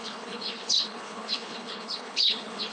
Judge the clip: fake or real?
fake